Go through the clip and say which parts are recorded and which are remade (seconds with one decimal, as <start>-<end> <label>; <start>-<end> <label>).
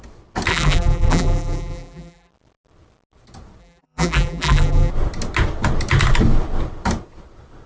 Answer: 0.0-0.5 recorded; 0.5-2.3 remade; 2.3-3.6 recorded; 3.6-4.9 remade; 4.9-7.7 recorded